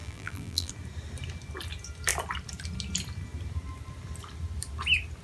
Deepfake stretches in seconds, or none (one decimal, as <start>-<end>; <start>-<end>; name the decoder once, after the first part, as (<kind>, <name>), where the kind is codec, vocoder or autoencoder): 0.0-0.7 (vocoder, BigVGAN v2)